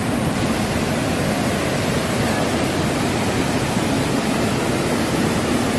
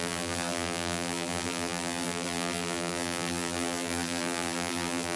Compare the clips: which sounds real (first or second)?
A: first